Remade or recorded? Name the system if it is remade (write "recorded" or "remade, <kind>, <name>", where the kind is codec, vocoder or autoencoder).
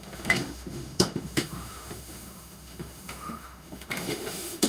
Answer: remade, autoencoder, DAC-VAE